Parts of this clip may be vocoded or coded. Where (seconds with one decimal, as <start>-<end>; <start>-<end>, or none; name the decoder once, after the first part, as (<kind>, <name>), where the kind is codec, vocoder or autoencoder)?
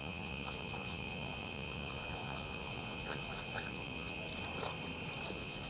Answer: 0.0-4.3 (vocoder, Vocos); 5.3-5.7